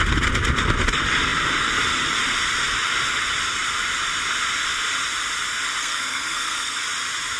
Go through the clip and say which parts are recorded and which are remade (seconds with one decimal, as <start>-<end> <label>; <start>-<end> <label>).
0.0-5.8 recorded; 5.8-6.8 remade; 6.8-7.4 recorded